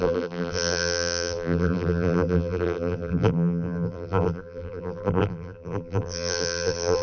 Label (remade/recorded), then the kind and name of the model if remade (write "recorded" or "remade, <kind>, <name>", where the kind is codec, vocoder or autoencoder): remade, vocoder, BigVGAN v2